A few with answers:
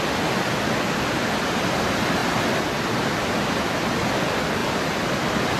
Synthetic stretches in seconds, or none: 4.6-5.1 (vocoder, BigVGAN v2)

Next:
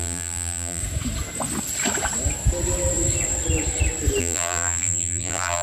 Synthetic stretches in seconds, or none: 0.0-0.8 (vocoder, BigVGAN v2); 4.2-5.6

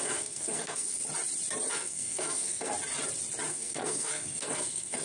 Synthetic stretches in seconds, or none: 0.0-1.0 (codec, SNAC); 1.7-2.7; 3.5-5.0

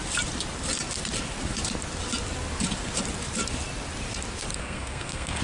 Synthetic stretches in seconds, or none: 4.5-5.4 (codec, SNAC)